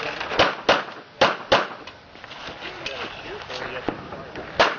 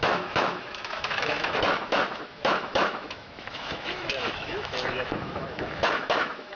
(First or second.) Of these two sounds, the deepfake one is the second